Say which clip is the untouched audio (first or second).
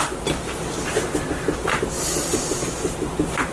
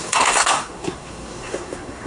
first